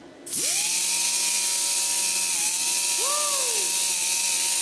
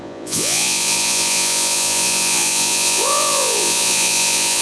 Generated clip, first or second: second